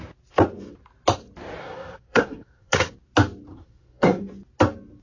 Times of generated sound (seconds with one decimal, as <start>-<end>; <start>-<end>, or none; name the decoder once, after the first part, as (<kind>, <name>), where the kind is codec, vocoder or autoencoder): 1.6-2.9 (codec, SNAC); 3.5-4.2